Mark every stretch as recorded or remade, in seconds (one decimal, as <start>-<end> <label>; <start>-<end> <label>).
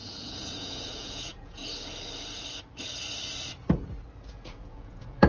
0.0-1.6 remade; 1.6-4.3 recorded; 4.3-5.3 remade